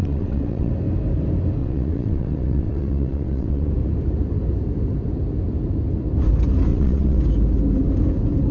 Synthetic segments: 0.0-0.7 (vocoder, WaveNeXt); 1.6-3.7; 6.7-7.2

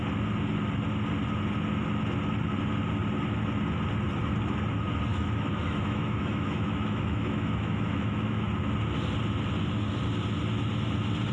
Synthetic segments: 5.1-8.5 (autoencoder, DAC-VAE)